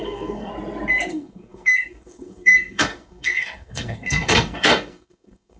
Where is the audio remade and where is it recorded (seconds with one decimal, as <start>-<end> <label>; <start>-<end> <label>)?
0.0-0.5 remade; 0.5-1.1 recorded; 1.1-5.6 remade